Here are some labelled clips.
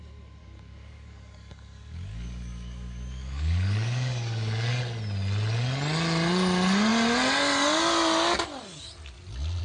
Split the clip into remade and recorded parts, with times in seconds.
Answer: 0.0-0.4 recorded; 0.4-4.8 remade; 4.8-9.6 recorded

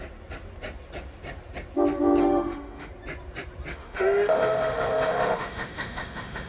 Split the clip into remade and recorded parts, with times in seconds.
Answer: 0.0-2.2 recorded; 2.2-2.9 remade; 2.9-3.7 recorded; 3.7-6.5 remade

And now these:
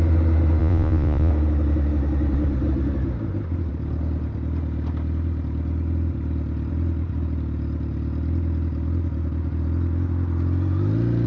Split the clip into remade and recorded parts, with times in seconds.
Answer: 0.0-0.6 recorded; 0.6-1.3 remade; 1.3-11.3 recorded

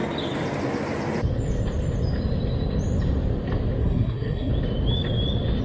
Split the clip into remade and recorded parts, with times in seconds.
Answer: 0.0-3.8 recorded; 3.8-4.5 remade; 4.5-5.6 recorded

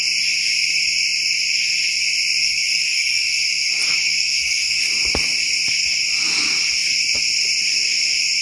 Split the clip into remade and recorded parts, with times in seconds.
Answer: 0.0-2.4 recorded; 2.4-3.7 remade; 3.7-4.2 recorded; 4.2-4.8 remade; 4.8-8.4 recorded

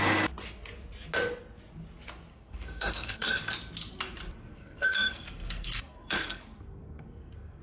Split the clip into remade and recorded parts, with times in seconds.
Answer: 0.0-2.3 recorded; 2.3-3.4 remade; 3.4-4.5 recorded; 4.5-7.6 remade